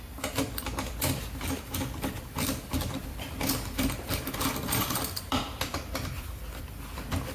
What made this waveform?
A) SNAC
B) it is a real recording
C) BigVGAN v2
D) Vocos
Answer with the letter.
C